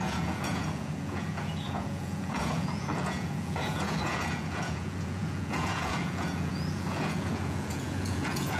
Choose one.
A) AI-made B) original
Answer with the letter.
A